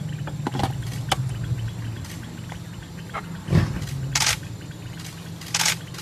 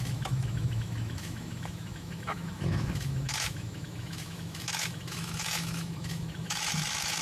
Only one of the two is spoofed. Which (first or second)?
second